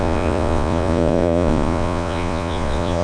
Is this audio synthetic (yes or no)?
yes